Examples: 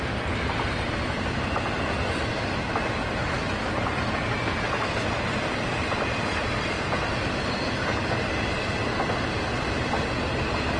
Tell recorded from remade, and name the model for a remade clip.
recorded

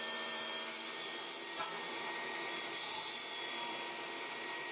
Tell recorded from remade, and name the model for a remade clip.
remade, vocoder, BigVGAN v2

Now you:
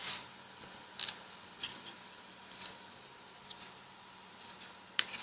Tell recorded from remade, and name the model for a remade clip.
recorded